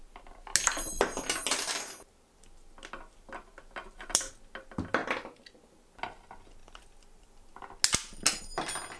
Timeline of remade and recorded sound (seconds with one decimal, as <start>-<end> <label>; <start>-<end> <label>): 0.0-6.6 recorded; 6.6-7.6 remade; 7.6-9.0 recorded